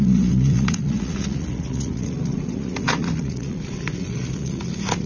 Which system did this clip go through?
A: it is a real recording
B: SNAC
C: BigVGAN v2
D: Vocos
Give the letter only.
D